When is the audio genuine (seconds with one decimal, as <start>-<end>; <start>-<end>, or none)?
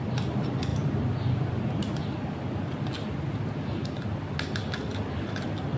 0.0-5.8